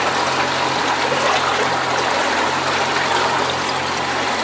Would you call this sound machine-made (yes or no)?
no